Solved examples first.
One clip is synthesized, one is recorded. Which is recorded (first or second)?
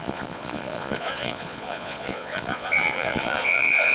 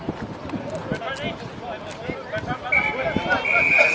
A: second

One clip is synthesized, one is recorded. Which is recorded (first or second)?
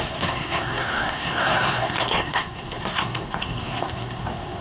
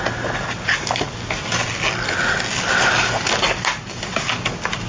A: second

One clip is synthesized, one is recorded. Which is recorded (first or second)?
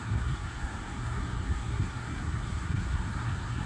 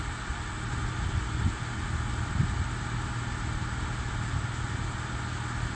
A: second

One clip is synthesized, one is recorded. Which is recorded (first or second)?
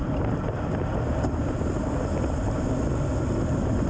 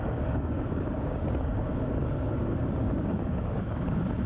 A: first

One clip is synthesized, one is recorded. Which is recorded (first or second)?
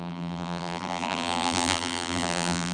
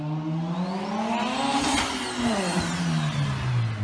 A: second